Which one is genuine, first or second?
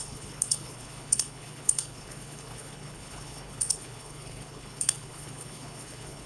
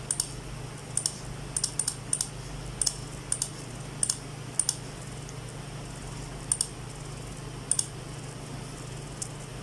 second